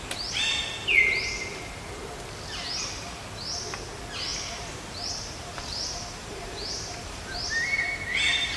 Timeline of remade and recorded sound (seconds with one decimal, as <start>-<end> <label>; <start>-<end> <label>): 0.0-4.3 recorded; 4.3-8.6 remade